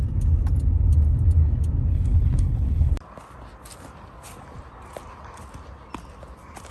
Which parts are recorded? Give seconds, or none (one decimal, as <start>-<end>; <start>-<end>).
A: 0.0-1.9; 2.9-6.7